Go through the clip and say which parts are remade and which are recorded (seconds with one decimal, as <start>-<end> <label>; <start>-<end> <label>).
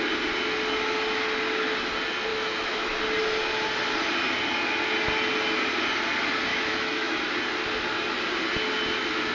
0.0-2.3 recorded; 2.3-3.0 remade; 3.0-6.5 recorded; 6.5-7.2 remade; 7.2-9.3 recorded